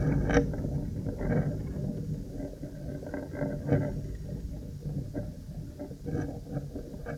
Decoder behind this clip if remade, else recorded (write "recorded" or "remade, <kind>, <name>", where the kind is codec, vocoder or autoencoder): recorded